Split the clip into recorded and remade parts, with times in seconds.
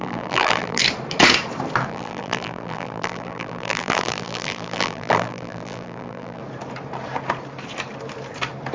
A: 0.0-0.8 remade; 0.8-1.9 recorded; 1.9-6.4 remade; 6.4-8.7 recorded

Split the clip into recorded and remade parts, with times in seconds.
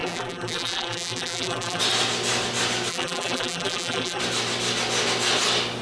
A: 0.0-1.8 remade; 1.8-2.9 recorded; 2.9-4.2 remade; 4.2-5.8 recorded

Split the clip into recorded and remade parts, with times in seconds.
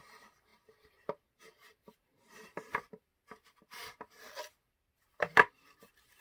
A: 0.0-3.1 remade; 3.1-4.7 recorded; 4.7-6.2 remade